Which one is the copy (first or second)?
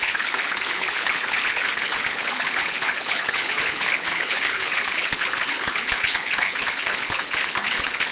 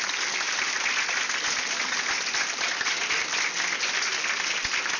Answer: first